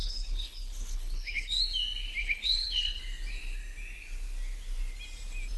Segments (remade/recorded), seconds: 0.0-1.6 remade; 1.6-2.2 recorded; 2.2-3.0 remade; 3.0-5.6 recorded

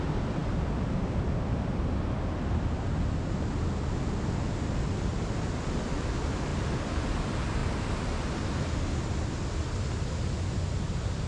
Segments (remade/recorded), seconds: 0.0-11.3 recorded

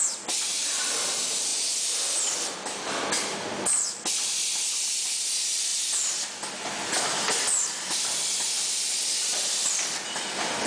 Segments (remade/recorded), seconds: 0.0-10.7 recorded

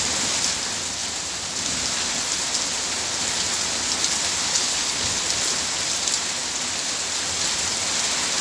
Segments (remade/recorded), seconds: 0.0-4.5 recorded; 4.5-5.2 remade; 5.2-8.4 recorded

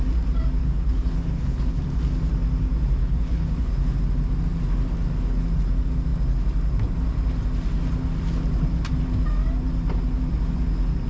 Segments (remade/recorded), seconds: 0.0-0.6 recorded; 0.6-1.8 remade; 1.8-3.0 recorded; 3.0-4.0 remade; 4.0-11.1 recorded

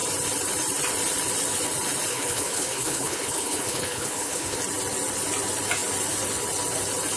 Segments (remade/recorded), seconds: 0.0-2.1 recorded; 2.1-4.6 remade; 4.6-7.2 recorded

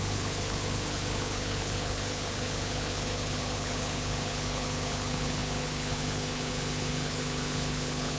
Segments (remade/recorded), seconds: 0.0-8.2 remade

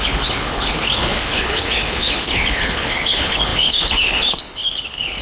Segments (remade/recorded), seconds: 0.0-5.2 remade